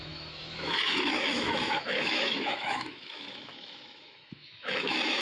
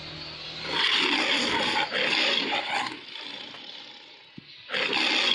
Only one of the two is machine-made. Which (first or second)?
first